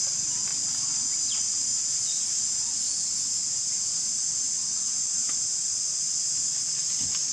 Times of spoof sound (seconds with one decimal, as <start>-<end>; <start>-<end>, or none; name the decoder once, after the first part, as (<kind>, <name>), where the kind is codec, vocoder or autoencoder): none